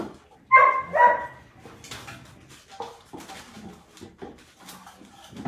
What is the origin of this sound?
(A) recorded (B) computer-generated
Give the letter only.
A